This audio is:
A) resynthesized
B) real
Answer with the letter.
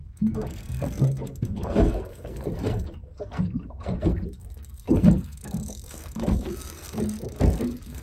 A